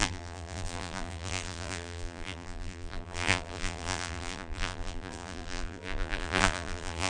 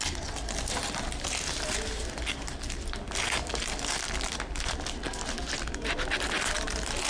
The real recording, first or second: second